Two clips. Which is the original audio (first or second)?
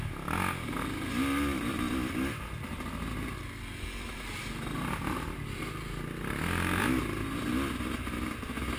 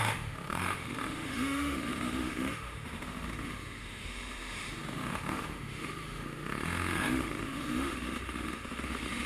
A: first